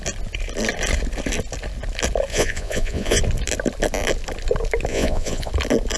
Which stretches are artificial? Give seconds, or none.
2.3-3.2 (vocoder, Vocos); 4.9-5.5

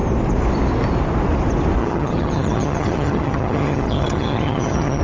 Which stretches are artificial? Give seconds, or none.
1.8-5.0 (vocoder, HiFi-GAN)

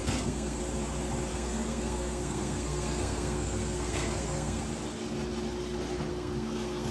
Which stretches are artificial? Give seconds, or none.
0.0-0.6 (codec, SNAC); 1.3-4.6; 6.1-6.9

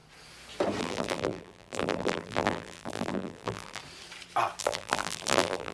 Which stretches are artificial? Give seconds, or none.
0.8-3.8 (vocoder, BigVGAN v2); 4.6-5.7

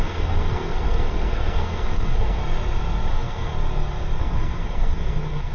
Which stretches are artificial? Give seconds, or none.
0.0-2.4 (codec, SNAC); 3.1-3.5; 4.2-5.5

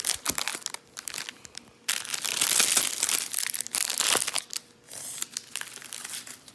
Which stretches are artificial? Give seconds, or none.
none